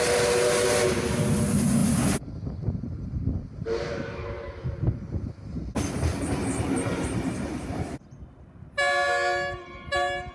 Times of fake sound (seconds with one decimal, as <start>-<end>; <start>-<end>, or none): 6.1-7.5